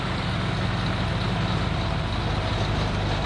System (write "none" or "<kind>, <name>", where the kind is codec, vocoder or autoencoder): none